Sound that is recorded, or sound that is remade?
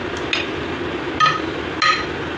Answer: recorded